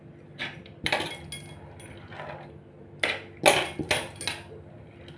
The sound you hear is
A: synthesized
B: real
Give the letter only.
B